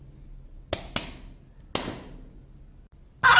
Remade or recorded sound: recorded